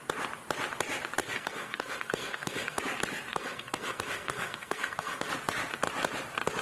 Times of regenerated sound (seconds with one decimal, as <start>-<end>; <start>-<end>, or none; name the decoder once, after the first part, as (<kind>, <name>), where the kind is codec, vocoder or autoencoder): 1.2-2.8 (codec, SNAC); 3.3-5.3